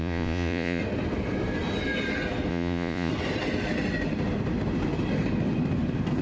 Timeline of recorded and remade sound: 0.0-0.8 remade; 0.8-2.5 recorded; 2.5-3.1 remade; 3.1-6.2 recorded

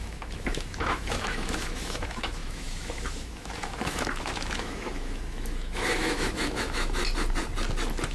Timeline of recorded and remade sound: 0.0-7.0 remade; 7.0-8.1 recorded

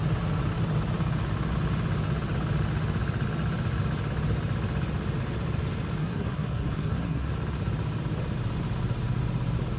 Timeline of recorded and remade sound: 0.0-6.0 recorded; 6.0-7.3 remade; 7.3-9.8 recorded

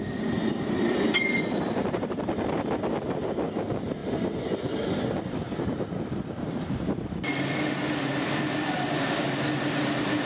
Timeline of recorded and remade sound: 0.0-10.3 recorded

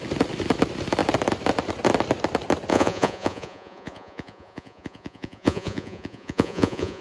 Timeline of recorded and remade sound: 0.0-2.7 recorded; 2.7-7.0 remade

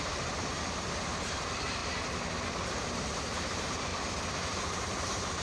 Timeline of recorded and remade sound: 0.0-1.8 remade; 1.8-2.7 recorded; 2.7-3.9 remade; 3.9-4.5 recorded; 4.5-5.4 remade

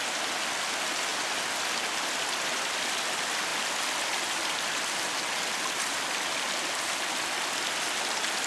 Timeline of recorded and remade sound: 0.0-8.5 recorded